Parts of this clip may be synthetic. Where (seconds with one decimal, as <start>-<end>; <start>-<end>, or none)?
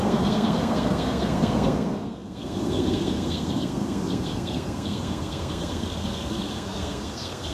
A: 0.0-7.5